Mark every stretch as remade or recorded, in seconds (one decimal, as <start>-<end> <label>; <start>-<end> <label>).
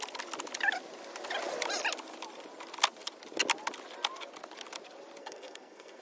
0.0-5.2 recorded; 5.2-6.0 remade